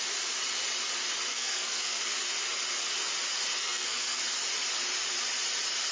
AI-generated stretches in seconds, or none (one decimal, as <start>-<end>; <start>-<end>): 1.3-2.0; 3.6-4.2